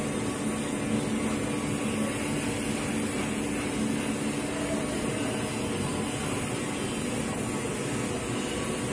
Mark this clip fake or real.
real